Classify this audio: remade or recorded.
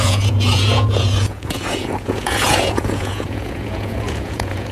remade